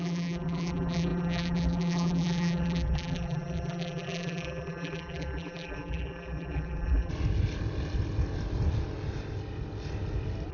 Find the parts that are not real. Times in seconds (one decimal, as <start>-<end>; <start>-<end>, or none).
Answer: 0.0-7.1

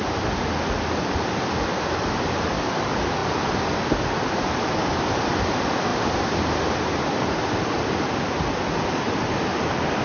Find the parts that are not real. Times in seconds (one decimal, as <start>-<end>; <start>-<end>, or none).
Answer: none

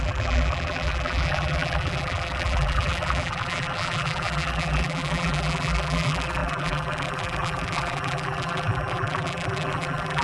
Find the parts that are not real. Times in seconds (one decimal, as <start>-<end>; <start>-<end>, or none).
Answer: 0.0-10.2

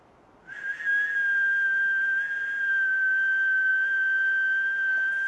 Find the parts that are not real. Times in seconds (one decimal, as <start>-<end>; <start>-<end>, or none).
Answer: none